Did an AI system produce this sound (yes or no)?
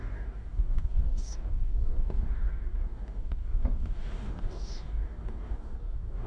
yes